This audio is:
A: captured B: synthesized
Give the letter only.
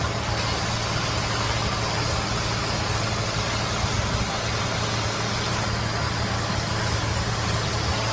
A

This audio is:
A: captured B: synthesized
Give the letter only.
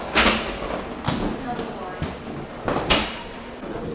A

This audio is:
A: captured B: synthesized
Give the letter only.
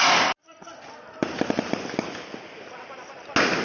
A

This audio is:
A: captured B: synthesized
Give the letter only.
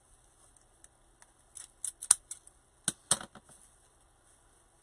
A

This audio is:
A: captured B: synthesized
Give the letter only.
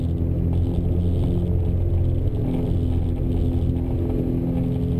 A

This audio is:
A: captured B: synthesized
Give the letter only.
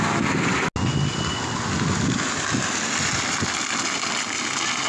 A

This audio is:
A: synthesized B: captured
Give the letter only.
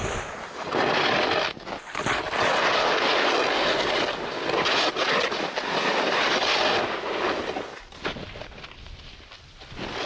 B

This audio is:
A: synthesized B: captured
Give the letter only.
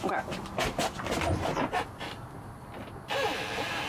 B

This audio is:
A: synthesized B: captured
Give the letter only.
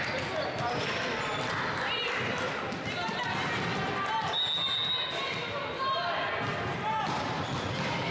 B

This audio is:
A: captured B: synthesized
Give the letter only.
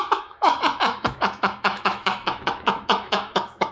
B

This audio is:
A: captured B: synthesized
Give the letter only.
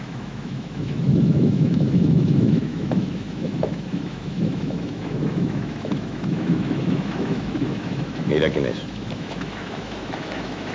B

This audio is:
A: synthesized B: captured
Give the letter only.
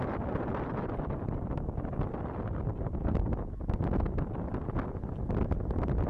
B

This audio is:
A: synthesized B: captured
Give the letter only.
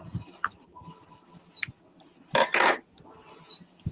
B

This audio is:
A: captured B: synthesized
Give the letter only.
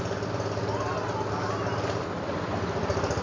A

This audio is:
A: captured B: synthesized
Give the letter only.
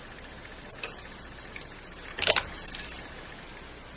A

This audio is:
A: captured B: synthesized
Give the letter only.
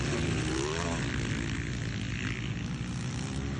A